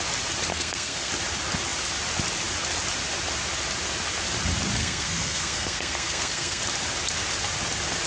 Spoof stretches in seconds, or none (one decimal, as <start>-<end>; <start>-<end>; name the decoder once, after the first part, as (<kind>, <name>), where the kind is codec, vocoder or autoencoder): 0.5-1.1 (codec, SNAC); 4.8-6.6